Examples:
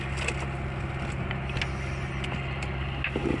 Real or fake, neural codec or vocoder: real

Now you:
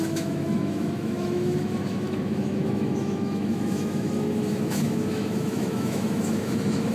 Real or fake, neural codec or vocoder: fake, autoencoder, DAC-VAE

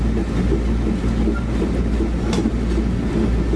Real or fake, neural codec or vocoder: real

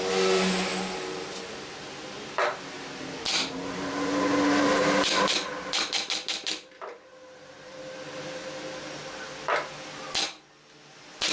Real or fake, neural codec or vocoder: real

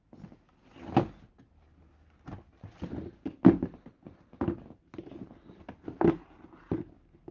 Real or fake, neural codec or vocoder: real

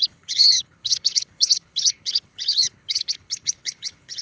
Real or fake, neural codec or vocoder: fake, codec, HILCodec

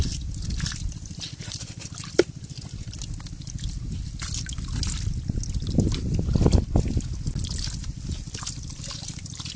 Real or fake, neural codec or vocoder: real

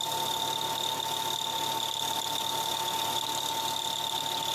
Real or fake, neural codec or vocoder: real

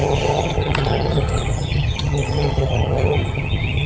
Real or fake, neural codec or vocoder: fake, vocoder, HiFi-GAN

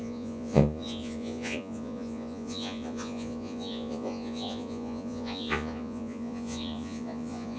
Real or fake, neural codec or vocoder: fake, vocoder, Vocos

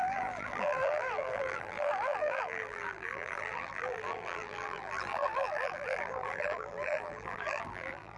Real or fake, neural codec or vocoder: fake, vocoder, BigVGAN v2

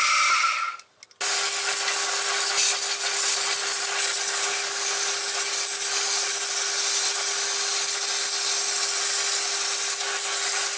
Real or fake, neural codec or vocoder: real